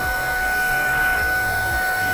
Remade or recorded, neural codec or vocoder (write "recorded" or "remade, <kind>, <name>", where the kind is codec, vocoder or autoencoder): remade, codec, SNAC